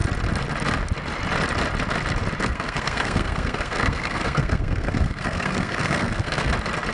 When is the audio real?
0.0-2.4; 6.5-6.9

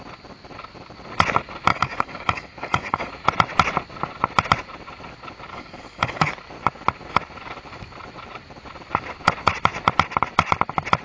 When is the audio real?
0.0-1.7; 3.1-5.5; 6.3-11.0

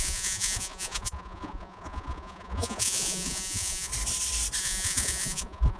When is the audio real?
3.9-4.6